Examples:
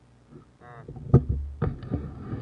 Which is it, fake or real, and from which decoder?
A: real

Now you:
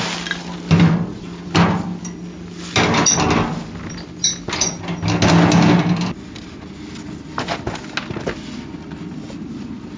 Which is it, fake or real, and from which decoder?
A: real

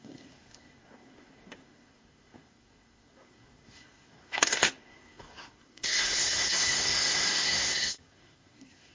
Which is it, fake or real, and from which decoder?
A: fake, codec, SNAC